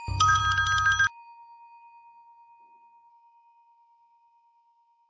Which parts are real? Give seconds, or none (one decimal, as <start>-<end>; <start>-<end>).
0.4-3.1